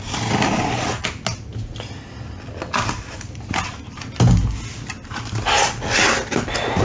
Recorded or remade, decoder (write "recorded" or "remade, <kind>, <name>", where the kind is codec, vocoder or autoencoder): recorded